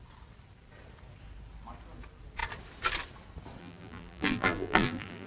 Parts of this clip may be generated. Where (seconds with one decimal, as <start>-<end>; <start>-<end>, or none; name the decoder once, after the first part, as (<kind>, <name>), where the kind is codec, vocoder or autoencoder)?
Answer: 3.6-5.3 (vocoder, BigVGAN v2)